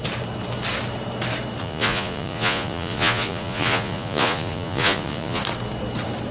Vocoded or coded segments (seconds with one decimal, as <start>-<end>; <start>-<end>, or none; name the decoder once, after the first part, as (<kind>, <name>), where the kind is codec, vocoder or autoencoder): 1.6-5.4 (vocoder, Vocos)